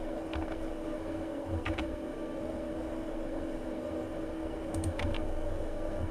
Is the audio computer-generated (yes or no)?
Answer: yes